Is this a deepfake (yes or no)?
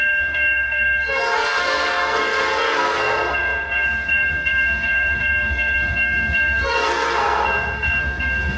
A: yes